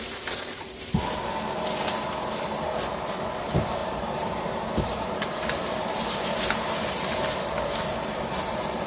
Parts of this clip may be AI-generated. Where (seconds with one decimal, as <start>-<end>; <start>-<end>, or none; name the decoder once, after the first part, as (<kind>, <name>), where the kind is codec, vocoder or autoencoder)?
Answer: 3.8-6.8 (vocoder, BigVGAN v2)